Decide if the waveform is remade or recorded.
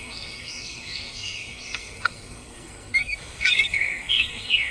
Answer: remade